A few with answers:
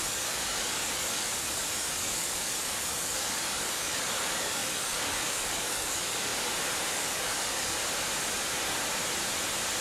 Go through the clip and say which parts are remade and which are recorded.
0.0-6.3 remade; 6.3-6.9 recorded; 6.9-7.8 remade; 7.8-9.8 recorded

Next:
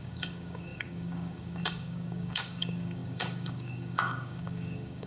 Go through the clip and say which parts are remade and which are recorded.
0.0-5.1 remade